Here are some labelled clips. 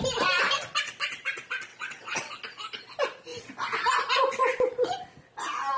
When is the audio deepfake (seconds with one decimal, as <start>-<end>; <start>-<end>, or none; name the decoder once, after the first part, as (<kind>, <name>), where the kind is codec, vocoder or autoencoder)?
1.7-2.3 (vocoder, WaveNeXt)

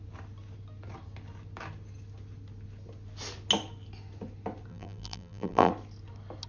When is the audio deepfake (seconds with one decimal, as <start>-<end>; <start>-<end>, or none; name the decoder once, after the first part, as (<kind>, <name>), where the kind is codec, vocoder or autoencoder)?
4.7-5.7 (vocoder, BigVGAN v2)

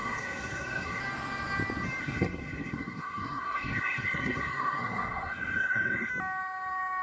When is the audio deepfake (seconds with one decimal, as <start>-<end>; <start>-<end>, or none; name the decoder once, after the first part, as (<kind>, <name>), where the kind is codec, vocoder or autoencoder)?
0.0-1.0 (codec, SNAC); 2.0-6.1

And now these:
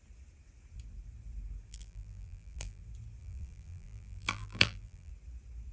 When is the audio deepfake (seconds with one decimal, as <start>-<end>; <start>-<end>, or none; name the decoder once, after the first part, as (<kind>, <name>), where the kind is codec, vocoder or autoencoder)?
1.7-2.8 (vocoder, BigVGAN v2); 3.2-5.1

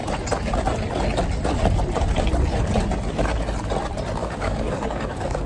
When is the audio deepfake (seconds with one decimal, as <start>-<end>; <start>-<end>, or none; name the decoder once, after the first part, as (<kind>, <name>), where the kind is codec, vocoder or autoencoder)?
4.2-5.5 (codec, DAC)

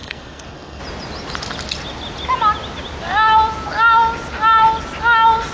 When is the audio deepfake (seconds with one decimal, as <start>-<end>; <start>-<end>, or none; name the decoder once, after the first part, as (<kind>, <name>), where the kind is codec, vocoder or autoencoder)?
0.0-0.8 (codec, SNAC)

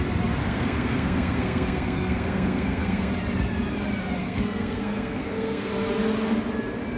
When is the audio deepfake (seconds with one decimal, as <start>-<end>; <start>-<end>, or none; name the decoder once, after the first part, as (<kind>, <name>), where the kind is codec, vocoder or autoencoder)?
0.4-3.1 (codec, SNAC); 4.2-5.7